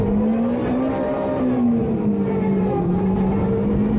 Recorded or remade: remade